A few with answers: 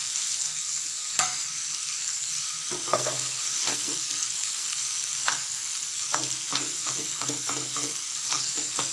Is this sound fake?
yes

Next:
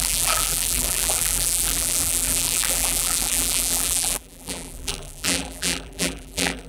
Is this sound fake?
yes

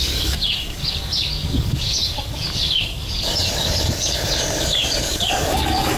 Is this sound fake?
yes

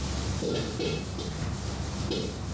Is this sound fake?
no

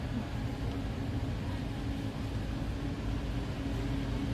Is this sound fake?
no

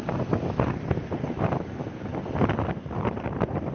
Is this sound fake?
no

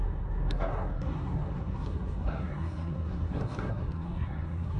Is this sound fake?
yes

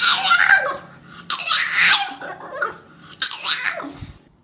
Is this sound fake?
no